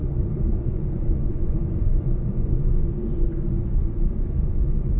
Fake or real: fake